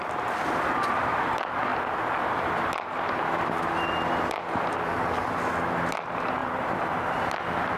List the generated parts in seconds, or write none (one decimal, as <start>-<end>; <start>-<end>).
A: none